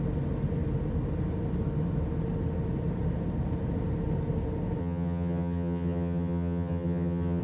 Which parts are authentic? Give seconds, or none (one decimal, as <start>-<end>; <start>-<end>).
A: 0.0-4.8